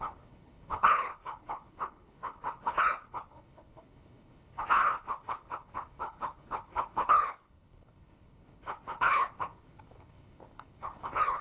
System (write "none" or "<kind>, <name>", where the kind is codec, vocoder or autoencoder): codec, HILCodec